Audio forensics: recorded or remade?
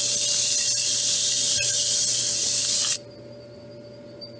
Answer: recorded